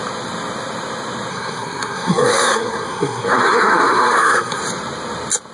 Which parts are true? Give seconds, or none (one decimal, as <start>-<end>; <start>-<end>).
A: 0.0-1.3; 4.6-5.5